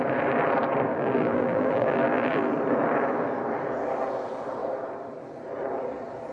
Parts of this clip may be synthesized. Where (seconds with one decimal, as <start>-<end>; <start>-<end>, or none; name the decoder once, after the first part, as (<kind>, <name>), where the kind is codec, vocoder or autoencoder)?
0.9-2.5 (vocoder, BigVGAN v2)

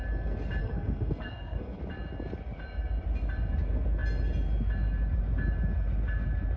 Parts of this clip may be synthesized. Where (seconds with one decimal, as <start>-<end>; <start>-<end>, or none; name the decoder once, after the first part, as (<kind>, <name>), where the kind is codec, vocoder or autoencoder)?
0.6-1.8 (codec, SNAC)

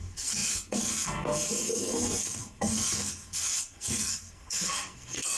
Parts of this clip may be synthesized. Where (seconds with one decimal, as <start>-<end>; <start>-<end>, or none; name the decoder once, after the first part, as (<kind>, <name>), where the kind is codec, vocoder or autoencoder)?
0.0-5.4 (codec, SNAC)

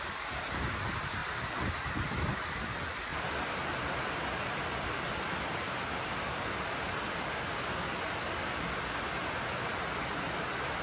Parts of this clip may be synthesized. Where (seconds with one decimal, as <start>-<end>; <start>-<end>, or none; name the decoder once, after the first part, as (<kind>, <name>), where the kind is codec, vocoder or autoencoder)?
none